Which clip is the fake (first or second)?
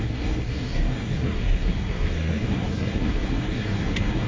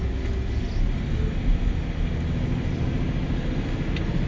first